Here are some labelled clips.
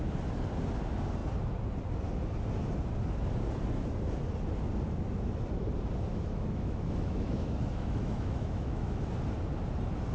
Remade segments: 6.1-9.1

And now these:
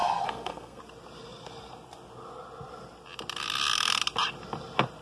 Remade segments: 0.0-0.8

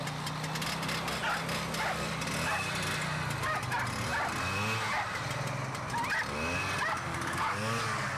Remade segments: 7.1-8.2

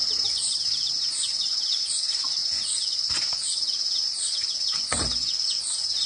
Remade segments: 0.9-6.1

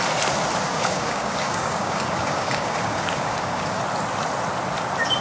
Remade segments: 0.7-3.8

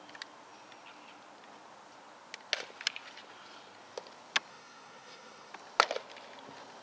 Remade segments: 4.5-5.5

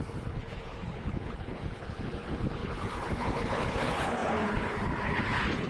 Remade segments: 0.0-5.7

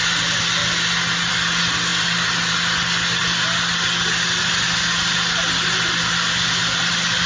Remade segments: none